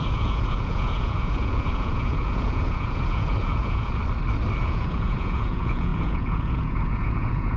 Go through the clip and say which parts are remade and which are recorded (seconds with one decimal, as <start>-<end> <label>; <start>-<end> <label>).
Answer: 0.0-4.0 remade; 4.0-4.6 recorded; 4.6-7.6 remade